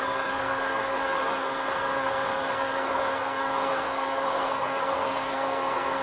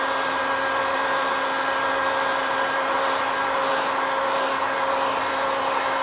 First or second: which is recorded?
second